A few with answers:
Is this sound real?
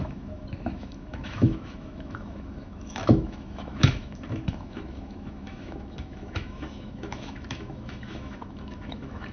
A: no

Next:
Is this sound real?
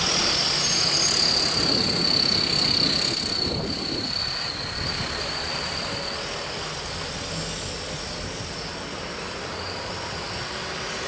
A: yes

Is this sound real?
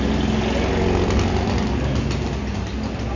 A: yes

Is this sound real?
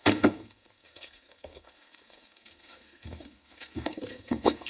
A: no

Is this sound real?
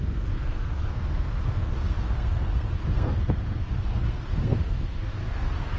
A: no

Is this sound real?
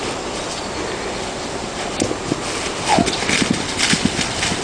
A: yes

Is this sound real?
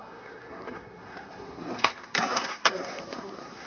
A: no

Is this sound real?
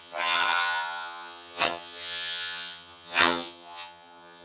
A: no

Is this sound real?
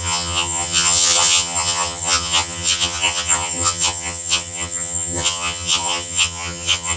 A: no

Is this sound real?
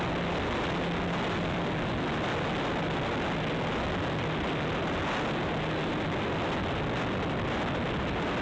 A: yes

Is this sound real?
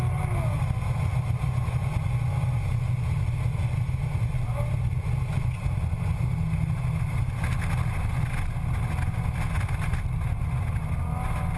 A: yes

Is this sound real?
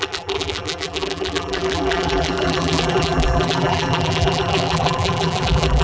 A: no